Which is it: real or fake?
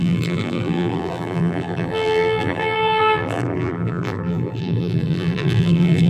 fake